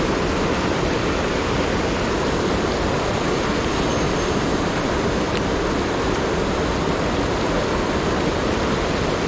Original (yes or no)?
yes